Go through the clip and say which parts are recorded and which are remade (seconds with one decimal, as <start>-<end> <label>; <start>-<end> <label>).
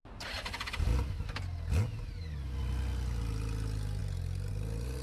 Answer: 0.0-4.0 recorded; 4.0-4.5 remade; 4.5-5.0 recorded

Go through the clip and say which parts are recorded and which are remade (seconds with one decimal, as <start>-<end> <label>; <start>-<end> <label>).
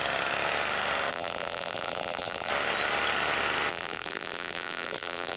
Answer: 0.0-1.1 recorded; 1.1-2.5 remade; 2.5-3.7 recorded; 3.7-5.4 remade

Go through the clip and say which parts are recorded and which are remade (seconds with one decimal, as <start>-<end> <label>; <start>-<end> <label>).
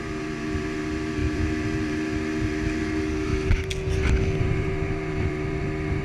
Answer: 0.0-3.3 remade; 3.3-4.4 recorded; 4.4-6.0 remade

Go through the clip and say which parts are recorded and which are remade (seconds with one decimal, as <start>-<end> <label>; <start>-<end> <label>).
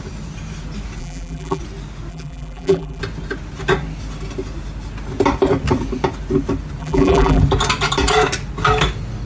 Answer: 0.0-1.0 recorded; 1.0-1.6 remade; 1.6-2.1 recorded; 2.1-3.0 remade; 3.0-6.8 recorded; 6.8-7.4 remade; 7.4-9.3 recorded